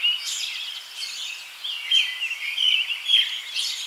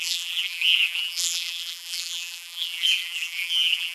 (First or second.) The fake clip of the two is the second